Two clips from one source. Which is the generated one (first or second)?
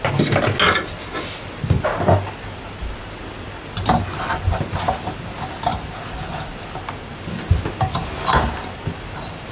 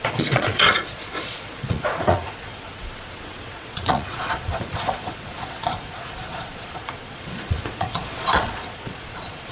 second